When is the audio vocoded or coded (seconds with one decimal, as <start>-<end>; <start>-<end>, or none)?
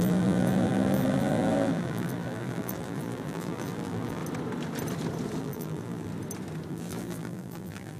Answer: 0.0-4.2; 5.4-6.1; 6.7-8.0